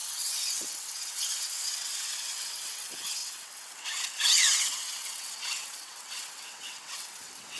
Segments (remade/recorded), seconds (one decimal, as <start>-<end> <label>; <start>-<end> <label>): 0.0-7.6 remade